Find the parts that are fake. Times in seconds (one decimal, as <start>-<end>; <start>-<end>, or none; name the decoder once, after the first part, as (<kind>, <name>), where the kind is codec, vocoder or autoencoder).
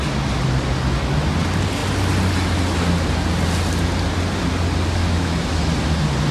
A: 5.0-5.6 (autoencoder, DAC-VAE)